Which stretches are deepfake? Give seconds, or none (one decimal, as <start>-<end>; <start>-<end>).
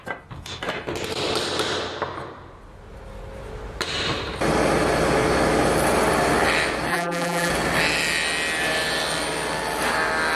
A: 6.9-7.5